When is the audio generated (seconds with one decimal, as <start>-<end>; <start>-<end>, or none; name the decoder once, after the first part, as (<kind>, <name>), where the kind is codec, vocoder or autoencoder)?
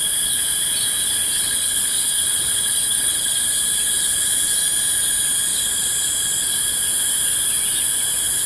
1.4-3.4 (codec, HILCodec)